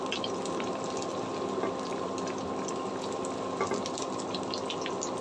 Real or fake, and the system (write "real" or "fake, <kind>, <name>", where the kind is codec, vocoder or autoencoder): real